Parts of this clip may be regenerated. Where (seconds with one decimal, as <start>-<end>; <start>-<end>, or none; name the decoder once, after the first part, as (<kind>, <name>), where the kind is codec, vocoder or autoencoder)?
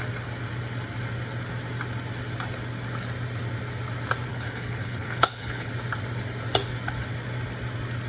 4.3-5.7 (codec, HILCodec)